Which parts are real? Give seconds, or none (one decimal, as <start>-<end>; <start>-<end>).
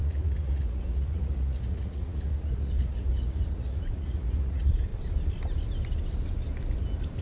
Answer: 4.9-7.2